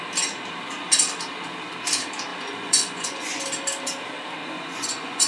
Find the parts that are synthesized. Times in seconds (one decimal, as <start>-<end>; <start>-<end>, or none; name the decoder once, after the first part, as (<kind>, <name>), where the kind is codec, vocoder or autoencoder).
2.3-3.4 (vocoder, Vocos); 4.4-5.3